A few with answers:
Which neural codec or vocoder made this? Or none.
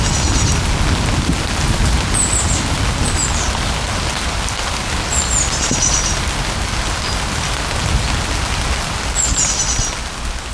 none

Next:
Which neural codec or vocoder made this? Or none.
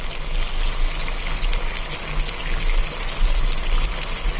none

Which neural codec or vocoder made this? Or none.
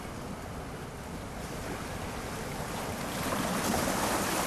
none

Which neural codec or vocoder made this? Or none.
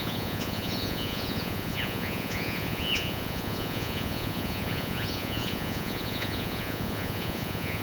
vocoder, Vocos